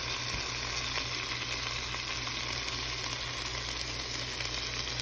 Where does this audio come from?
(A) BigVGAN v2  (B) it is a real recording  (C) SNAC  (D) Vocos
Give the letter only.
B